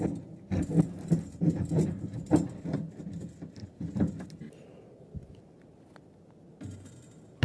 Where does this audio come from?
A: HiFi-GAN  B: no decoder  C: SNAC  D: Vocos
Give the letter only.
B